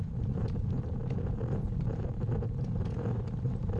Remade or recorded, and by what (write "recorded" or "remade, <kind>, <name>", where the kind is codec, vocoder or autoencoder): remade, vocoder, BigVGAN v2